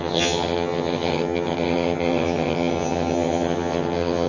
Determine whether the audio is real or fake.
fake